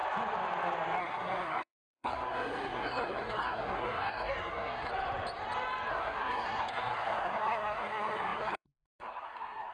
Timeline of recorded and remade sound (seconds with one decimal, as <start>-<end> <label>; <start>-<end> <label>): 0.0-1.0 recorded; 1.0-4.9 remade; 4.9-5.9 recorded; 5.9-9.7 remade